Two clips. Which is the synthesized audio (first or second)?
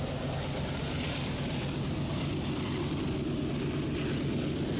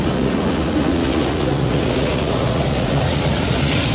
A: second